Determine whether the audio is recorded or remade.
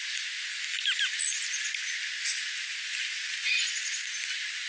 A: recorded